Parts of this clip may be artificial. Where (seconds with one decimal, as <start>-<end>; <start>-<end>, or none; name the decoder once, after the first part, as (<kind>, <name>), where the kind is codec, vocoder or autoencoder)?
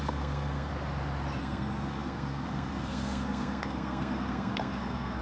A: 0.0-0.7 (codec, SNAC); 1.4-5.2